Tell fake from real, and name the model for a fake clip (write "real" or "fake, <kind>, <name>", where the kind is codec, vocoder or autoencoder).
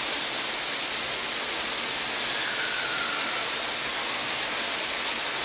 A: real